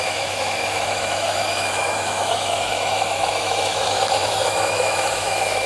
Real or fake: fake